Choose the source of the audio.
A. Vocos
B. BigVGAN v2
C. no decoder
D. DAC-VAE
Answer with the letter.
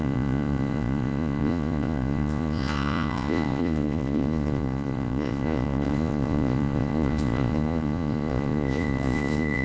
A